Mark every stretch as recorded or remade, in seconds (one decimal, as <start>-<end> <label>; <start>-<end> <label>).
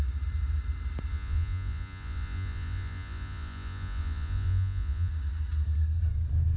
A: 0.0-1.1 recorded; 1.1-5.1 remade; 5.1-6.6 recorded